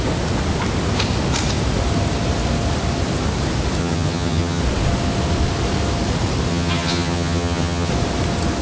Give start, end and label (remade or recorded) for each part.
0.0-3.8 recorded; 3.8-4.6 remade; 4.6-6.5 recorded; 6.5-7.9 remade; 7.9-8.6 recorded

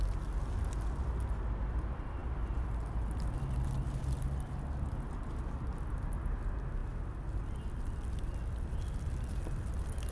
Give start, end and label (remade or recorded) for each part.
0.0-10.1 recorded

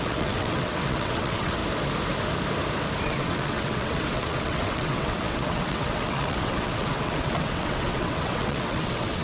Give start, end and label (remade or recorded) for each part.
0.0-1.6 remade; 1.6-3.0 recorded; 3.0-9.2 remade

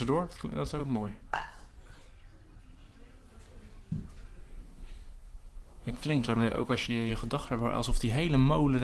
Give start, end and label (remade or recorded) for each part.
0.0-0.8 recorded; 0.8-1.6 remade; 1.6-4.4 recorded; 4.4-7.1 remade; 7.1-8.8 recorded

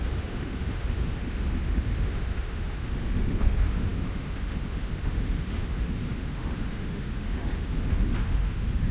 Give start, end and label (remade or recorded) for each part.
0.0-8.9 remade

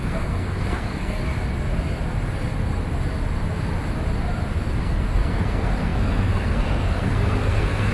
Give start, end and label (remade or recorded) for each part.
0.0-1.2 remade; 1.2-4.8 recorded; 4.8-7.9 remade